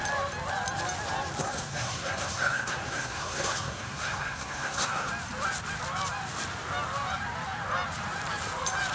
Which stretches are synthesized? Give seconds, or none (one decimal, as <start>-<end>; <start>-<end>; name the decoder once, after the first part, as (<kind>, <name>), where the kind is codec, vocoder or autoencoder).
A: 1.4-5.1 (codec, SNAC)